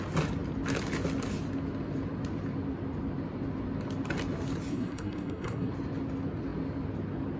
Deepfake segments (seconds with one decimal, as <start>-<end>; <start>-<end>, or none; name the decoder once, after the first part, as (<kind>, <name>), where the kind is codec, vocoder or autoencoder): 4.7-5.7 (codec, SNAC)